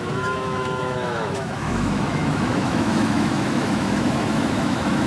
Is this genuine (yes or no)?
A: no